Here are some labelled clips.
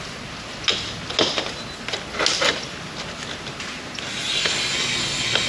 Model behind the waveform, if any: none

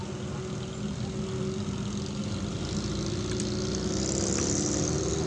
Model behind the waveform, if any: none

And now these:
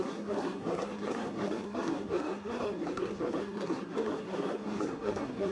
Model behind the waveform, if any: codec, SNAC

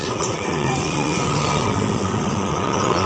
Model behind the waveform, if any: vocoder, WaveNeXt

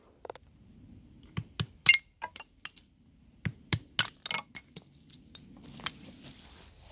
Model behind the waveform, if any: none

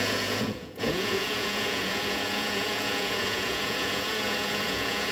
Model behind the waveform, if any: vocoder, Vocos